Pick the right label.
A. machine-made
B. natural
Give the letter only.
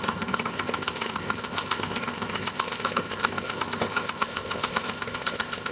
A